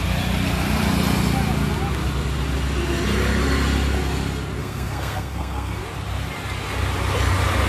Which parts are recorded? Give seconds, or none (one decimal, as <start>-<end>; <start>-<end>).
0.0-4.6; 5.8-7.7